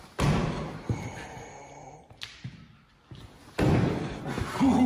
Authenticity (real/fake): real